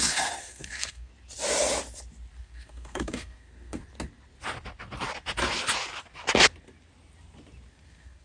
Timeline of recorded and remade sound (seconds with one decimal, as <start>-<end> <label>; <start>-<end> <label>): 0.0-1.1 remade; 1.1-2.4 recorded; 2.4-3.8 remade; 3.8-7.7 recorded; 7.7-8.2 remade

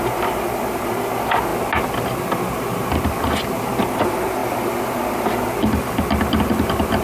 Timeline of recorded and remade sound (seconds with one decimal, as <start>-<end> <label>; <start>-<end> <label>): 0.0-7.0 recorded

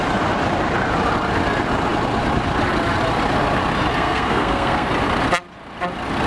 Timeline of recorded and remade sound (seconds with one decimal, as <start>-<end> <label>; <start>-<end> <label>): 0.0-3.9 recorded; 3.9-4.9 remade; 4.9-6.3 recorded

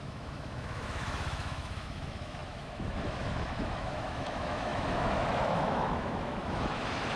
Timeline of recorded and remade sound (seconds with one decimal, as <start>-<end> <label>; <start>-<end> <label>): 0.0-7.2 remade

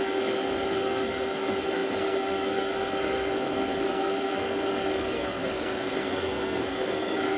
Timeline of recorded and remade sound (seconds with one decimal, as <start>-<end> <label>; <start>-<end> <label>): 0.0-7.4 remade